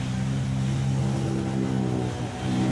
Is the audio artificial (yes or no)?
no